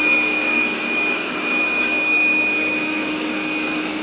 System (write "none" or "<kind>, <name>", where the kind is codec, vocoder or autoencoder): codec, DAC